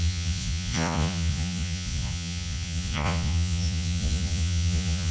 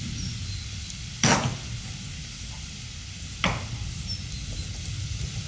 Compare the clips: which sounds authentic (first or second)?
second